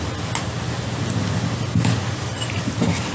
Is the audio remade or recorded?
recorded